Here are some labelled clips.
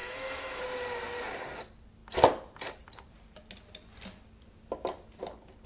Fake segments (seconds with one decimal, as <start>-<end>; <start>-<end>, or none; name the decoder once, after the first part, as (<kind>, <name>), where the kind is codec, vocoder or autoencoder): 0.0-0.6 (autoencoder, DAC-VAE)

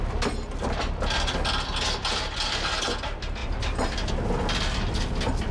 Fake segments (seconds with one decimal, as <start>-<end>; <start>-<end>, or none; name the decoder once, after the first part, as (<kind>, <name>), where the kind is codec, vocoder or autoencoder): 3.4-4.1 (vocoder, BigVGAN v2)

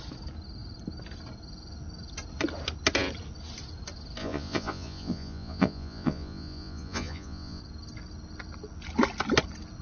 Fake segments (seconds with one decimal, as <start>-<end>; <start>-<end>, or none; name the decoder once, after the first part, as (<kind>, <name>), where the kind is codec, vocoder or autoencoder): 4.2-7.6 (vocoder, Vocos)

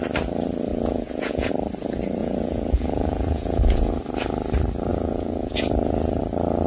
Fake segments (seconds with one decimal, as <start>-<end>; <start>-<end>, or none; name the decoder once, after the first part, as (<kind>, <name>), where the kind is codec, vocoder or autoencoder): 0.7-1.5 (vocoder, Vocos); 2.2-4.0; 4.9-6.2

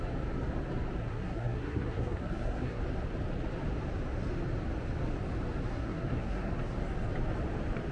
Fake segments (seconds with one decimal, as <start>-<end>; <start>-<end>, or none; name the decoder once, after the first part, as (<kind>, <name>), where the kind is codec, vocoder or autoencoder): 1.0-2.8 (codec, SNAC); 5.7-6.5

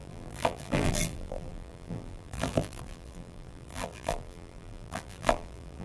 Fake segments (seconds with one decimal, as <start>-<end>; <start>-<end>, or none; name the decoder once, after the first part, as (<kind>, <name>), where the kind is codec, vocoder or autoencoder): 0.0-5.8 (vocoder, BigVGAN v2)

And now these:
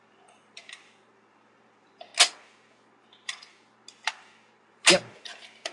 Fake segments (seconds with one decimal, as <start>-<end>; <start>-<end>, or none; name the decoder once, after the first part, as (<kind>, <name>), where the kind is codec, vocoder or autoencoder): 0.0-2.1 (vocoder, BigVGAN v2); 3.0-3.5; 4.1-5.7